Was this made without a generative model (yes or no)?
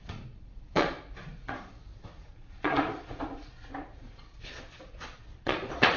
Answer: no